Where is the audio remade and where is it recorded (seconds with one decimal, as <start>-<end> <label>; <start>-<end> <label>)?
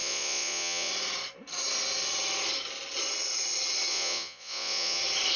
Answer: 0.0-0.9 remade; 0.9-3.9 recorded; 3.9-5.0 remade; 5.0-5.4 recorded